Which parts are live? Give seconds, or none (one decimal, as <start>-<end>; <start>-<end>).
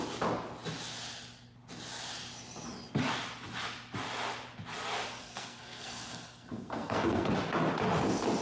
0.0-5.2; 7.3-8.4